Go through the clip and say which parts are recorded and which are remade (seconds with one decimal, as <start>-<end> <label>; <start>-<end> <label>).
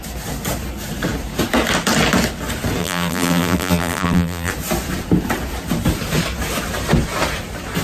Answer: 0.0-2.8 recorded; 2.8-4.5 remade; 4.5-7.8 recorded